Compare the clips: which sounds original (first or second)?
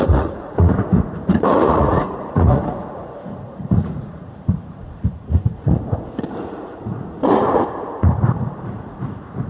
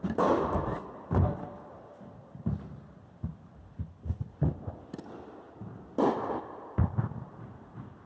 second